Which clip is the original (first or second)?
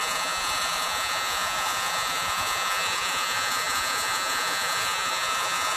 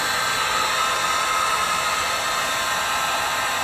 second